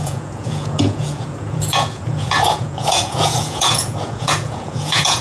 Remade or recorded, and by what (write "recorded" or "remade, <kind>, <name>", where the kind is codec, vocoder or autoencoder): remade, vocoder, Vocos